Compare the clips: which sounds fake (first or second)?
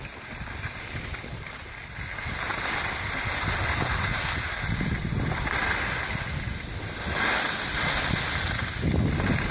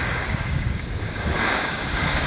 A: second